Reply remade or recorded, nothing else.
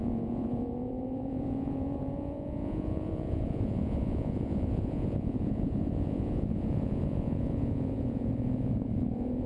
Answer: remade